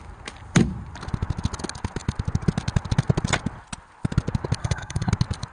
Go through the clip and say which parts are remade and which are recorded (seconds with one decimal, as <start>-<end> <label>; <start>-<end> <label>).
0.0-4.6 recorded; 4.6-5.1 remade; 5.1-5.5 recorded